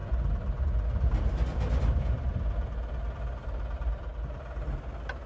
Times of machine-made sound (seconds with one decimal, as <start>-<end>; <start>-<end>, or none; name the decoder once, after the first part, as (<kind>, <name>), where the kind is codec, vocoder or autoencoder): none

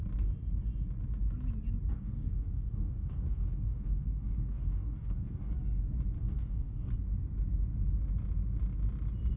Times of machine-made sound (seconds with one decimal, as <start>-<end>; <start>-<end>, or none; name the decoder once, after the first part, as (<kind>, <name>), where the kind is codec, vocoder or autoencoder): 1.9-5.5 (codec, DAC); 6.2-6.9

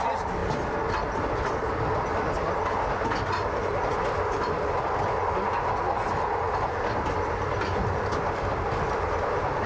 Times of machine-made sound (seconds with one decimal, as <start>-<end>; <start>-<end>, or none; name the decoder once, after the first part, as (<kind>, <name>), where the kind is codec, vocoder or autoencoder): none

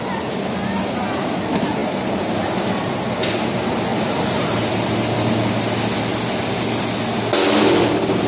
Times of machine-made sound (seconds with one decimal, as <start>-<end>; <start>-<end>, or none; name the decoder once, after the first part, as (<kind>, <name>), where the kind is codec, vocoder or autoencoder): 1.8-2.3 (vocoder, BigVGAN v2); 3.9-4.5

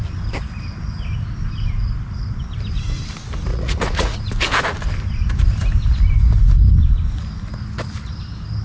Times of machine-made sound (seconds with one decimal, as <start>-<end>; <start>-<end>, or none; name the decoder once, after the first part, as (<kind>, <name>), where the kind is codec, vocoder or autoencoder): 3.5-4.2 (vocoder, Vocos)